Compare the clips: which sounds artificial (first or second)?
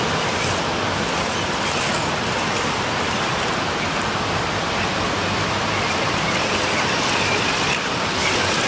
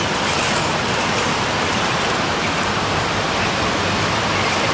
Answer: second